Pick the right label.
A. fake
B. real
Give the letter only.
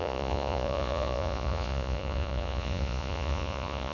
A